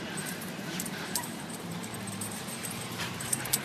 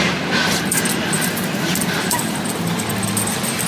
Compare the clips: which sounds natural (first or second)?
second